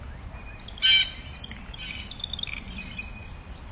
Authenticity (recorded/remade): recorded